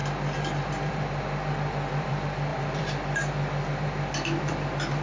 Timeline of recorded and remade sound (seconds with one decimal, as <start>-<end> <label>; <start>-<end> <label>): 0.0-0.7 recorded; 0.7-5.0 remade